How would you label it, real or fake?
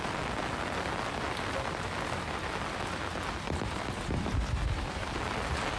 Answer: real